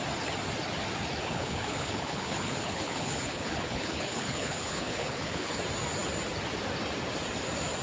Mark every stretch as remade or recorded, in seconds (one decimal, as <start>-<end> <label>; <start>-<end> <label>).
0.0-1.2 recorded; 1.2-5.6 remade; 5.6-7.8 recorded